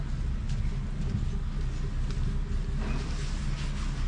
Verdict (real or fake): real